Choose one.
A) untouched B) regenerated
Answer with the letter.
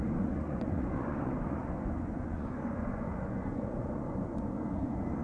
B